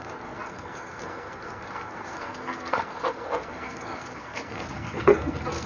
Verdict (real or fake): fake